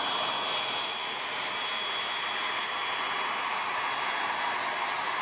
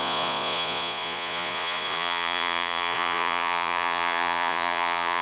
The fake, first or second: second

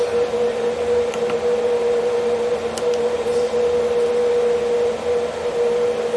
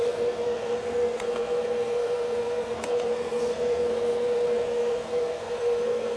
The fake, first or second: second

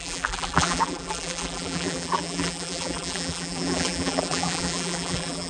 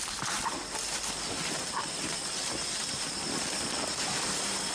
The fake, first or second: first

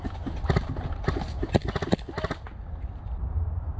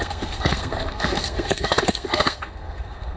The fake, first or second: second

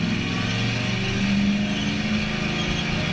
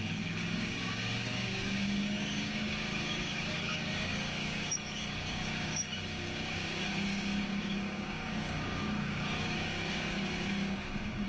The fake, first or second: second